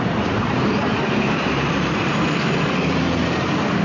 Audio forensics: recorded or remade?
remade